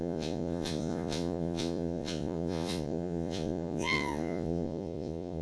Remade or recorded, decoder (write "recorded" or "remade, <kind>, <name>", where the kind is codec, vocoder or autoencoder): remade, vocoder, Vocos